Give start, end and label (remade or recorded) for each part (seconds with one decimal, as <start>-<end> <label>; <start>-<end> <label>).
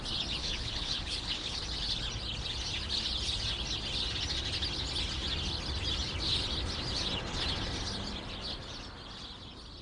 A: 0.0-0.4 recorded; 0.4-1.6 remade; 1.6-9.8 recorded